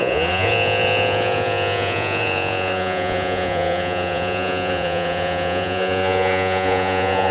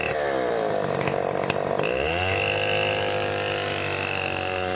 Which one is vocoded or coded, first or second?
first